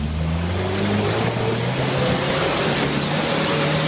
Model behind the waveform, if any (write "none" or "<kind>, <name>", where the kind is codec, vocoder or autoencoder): none